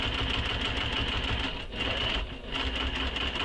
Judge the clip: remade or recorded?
recorded